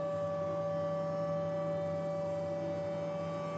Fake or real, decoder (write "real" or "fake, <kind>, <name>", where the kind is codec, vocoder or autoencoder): real